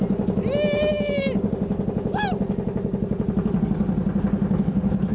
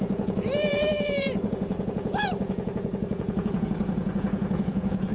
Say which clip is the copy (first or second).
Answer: second